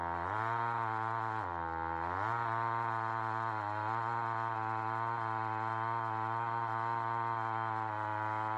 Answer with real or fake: real